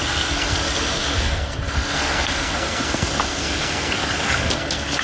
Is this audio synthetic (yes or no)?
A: yes